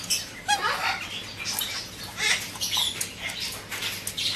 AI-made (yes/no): no